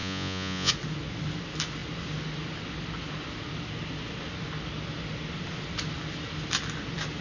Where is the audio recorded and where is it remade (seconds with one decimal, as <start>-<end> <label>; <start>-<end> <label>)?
0.0-0.7 remade; 0.7-7.2 recorded